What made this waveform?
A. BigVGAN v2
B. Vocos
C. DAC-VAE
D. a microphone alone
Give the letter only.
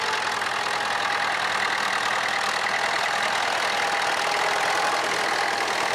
D